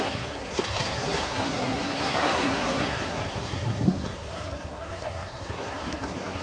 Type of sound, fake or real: fake